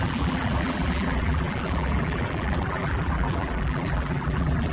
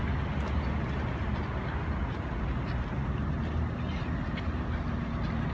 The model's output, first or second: first